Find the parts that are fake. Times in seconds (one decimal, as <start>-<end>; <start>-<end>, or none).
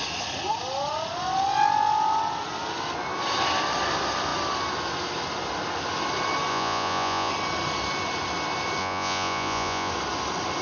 6.5-7.3; 8.8-9.9